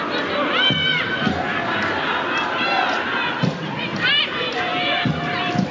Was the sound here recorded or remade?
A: recorded